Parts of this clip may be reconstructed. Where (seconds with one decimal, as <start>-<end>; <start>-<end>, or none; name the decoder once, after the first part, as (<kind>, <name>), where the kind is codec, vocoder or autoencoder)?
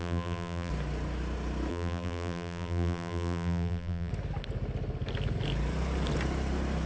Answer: 0.0-0.7 (vocoder, BigVGAN v2); 1.7-4.1